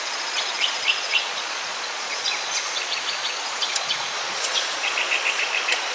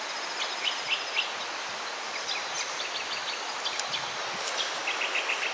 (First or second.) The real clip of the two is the second